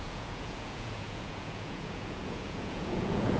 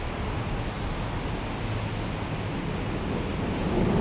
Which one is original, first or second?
second